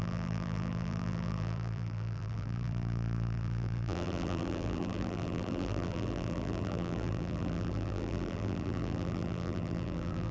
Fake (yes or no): yes